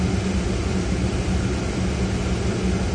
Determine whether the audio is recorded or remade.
recorded